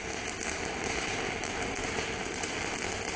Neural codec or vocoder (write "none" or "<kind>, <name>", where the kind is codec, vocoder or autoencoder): none